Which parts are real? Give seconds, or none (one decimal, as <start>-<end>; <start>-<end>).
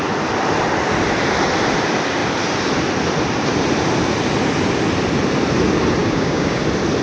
0.0-6.0; 6.6-7.0